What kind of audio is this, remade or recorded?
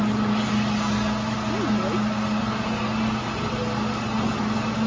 recorded